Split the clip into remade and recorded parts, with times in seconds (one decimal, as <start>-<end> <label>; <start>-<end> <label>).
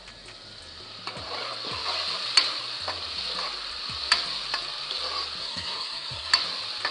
0.0-5.4 recorded; 5.4-6.3 remade; 6.3-6.9 recorded